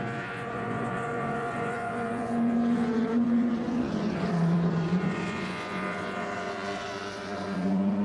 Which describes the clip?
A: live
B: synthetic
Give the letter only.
B